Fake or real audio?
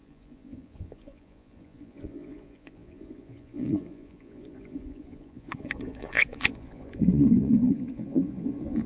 fake